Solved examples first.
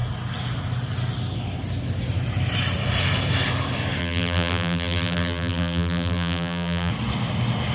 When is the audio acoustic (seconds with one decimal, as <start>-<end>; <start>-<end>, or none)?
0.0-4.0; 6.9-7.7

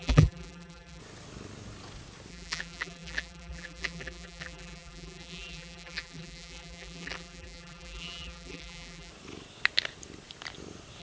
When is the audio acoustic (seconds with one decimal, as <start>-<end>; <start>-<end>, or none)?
1.0-2.3; 9.1-11.0

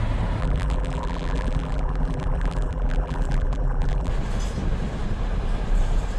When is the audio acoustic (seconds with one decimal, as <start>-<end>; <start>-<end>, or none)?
0.0-0.4; 4.1-6.2